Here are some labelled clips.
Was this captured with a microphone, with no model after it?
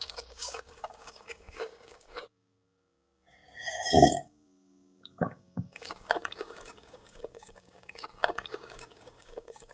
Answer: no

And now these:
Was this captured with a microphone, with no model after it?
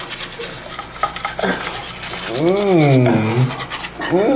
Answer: yes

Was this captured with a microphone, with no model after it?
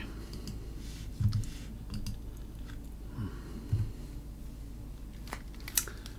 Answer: yes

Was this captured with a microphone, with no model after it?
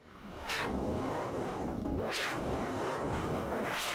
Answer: no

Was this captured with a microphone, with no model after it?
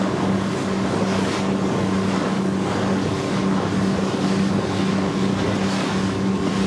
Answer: no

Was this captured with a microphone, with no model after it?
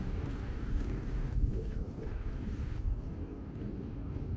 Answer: no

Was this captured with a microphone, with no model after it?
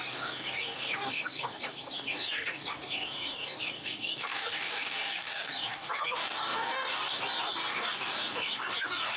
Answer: no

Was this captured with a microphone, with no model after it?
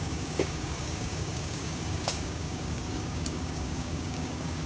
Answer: no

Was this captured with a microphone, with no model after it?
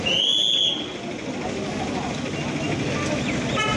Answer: yes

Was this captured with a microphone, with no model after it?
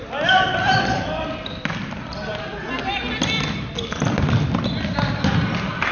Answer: yes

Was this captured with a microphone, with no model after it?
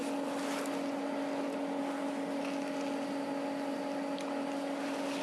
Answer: yes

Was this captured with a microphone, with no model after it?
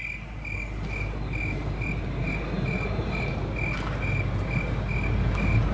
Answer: yes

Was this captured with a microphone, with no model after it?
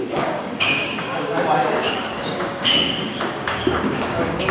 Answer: no